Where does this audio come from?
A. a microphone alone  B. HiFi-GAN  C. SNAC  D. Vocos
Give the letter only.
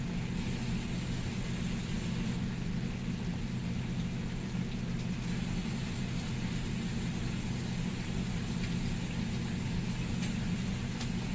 A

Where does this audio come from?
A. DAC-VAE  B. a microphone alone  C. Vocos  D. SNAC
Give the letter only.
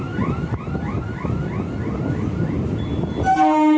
B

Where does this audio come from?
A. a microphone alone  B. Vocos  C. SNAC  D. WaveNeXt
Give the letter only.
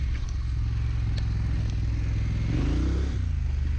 A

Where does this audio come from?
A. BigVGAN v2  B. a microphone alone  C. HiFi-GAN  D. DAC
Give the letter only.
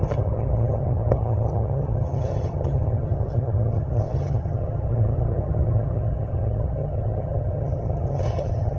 C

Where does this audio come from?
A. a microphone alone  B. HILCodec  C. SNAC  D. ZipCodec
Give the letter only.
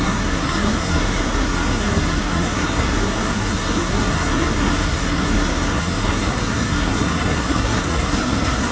C